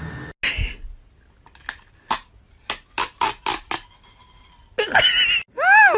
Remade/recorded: recorded